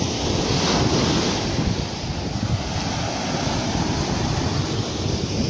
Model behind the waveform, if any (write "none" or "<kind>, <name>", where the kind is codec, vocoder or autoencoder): none